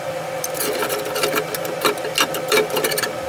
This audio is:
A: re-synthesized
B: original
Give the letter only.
B